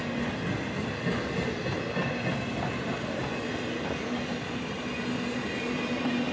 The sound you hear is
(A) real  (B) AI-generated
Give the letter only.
A